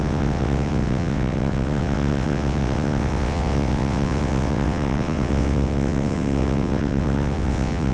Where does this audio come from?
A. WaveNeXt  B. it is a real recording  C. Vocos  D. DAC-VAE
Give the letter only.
A